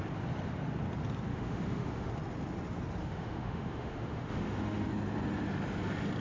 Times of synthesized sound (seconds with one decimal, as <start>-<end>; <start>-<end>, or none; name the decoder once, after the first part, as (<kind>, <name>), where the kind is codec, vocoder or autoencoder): 1.3-2.1 (autoencoder, DAC-VAE); 3.0-4.9